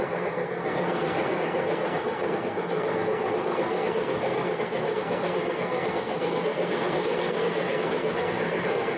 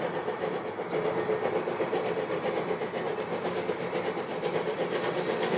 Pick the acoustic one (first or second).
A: second